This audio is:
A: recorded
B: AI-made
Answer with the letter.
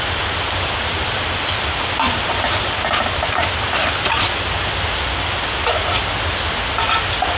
A